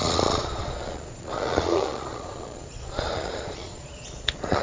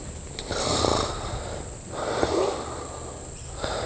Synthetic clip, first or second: first